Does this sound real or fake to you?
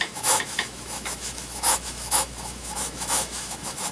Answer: fake